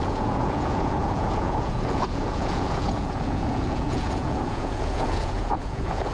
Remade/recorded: remade